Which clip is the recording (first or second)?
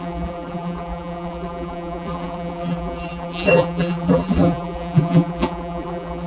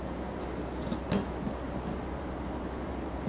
second